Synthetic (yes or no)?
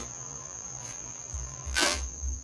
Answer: yes